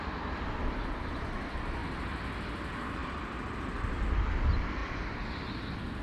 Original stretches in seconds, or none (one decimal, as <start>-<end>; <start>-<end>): 0.0-6.0